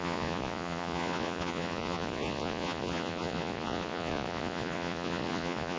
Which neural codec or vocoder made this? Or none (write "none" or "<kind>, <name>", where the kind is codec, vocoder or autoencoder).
vocoder, Vocos